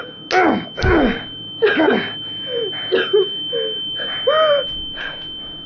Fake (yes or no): no